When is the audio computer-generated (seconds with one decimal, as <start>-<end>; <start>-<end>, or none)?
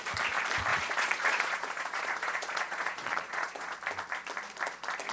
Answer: 0.7-3.8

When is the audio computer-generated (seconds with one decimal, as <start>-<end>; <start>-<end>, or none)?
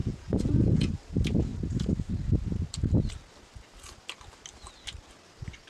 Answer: 0.0-0.9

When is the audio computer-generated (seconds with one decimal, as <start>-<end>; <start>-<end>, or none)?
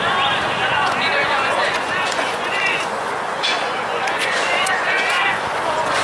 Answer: 0.0-6.0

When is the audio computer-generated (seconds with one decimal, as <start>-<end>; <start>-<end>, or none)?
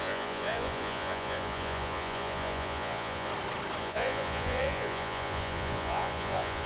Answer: 0.0-3.3; 3.8-6.7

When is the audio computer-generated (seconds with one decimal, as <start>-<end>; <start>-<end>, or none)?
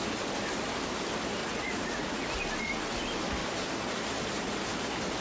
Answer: 1.4-2.2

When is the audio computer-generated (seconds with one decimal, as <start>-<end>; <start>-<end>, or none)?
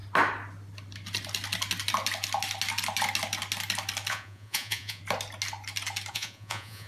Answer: 4.1-5.0; 6.1-6.9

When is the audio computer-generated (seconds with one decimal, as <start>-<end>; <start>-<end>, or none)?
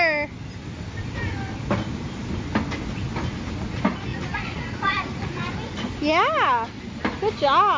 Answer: 4.1-5.7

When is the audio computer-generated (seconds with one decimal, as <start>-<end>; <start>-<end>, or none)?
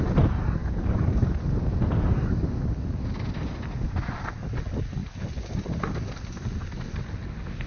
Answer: none